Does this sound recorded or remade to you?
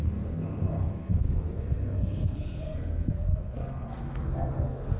remade